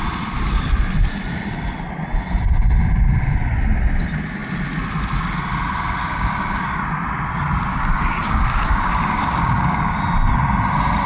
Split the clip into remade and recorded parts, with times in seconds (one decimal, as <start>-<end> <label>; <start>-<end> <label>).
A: 0.0-6.0 recorded; 6.0-6.8 remade; 6.8-7.7 recorded; 7.7-10.0 remade; 10.0-11.1 recorded